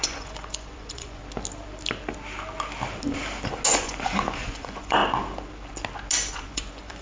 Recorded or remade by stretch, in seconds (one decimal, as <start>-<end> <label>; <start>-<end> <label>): 0.0-1.2 remade; 1.2-3.7 recorded; 3.7-5.0 remade; 5.0-6.3 recorded; 6.3-7.0 remade